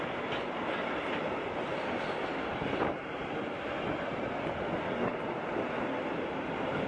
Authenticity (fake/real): real